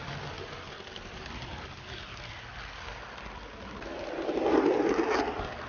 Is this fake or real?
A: real